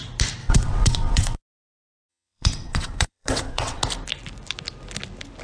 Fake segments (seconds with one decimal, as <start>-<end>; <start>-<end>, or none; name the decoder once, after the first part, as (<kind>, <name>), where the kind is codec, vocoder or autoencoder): 0.4-1.4 (vocoder, WaveNeXt); 2.1-3.8